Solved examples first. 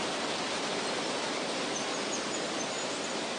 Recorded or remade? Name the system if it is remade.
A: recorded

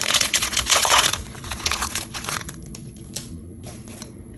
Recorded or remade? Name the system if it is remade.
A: remade, vocoder, Vocos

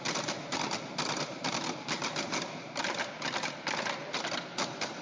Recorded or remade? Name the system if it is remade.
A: recorded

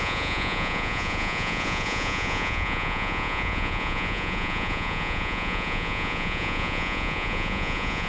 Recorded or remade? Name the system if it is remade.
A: remade, vocoder, Vocos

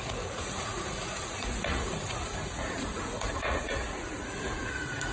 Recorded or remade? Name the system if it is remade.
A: remade, vocoder, Vocos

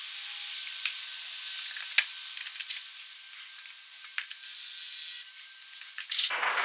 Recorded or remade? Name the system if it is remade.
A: recorded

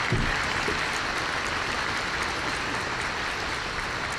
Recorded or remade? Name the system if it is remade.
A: recorded